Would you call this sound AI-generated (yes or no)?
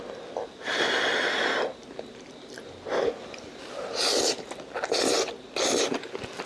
no